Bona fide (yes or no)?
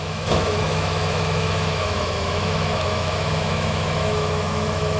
no